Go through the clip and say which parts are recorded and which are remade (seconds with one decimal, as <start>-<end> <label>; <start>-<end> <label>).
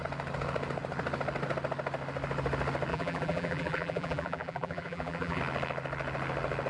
0.0-2.9 recorded; 2.9-5.4 remade; 5.4-6.7 recorded